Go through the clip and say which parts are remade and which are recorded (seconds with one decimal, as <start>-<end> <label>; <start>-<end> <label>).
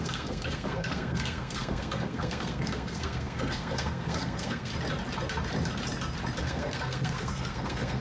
0.0-4.7 remade; 4.7-6.4 recorded; 6.4-8.0 remade